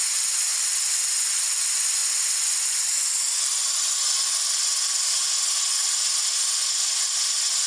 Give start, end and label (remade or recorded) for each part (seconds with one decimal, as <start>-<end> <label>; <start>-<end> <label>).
0.0-7.7 recorded